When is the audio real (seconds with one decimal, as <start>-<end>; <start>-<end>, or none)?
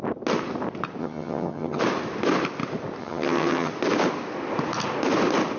0.0-1.0; 1.8-3.0; 3.7-5.6